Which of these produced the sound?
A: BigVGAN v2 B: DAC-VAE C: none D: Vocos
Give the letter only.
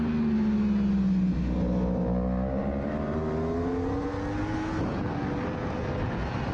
C